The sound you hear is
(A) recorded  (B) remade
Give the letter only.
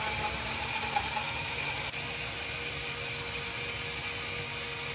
A